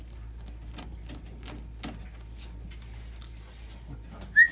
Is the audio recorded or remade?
recorded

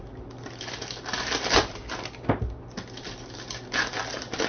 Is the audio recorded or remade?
recorded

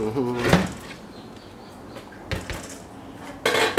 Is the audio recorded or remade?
recorded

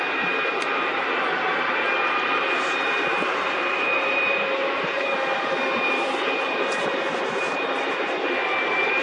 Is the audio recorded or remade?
remade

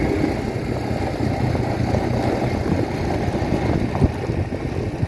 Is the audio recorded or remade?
recorded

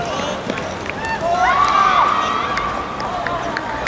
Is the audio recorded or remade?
recorded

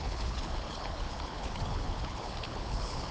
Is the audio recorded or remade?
remade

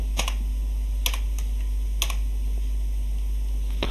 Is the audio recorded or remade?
recorded